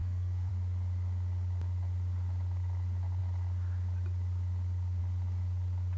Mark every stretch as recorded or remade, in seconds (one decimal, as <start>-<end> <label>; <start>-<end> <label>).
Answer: 0.0-0.5 remade; 0.5-6.0 recorded